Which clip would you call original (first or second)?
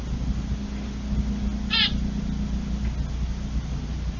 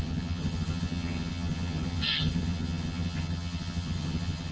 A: first